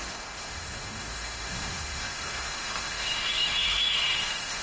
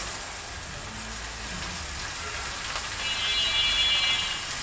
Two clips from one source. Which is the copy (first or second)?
first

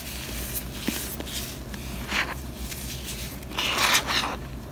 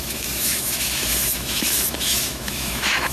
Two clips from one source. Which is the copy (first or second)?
second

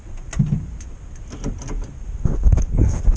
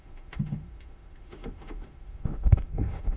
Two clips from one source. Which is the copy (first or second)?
second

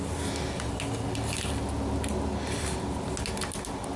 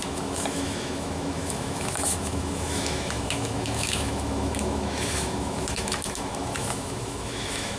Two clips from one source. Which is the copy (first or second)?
second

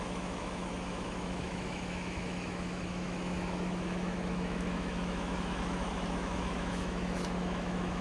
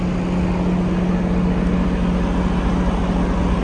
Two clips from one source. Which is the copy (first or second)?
first